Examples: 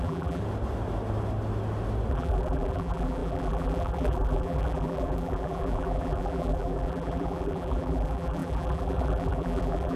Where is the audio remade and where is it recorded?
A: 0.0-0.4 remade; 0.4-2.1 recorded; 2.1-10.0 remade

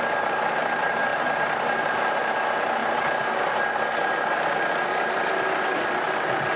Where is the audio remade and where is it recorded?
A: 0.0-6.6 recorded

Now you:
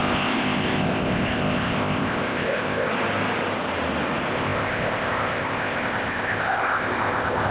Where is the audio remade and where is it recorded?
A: 0.0-2.9 remade; 2.9-4.3 recorded; 4.3-7.5 remade

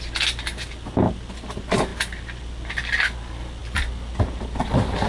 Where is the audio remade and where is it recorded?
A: 0.0-5.1 recorded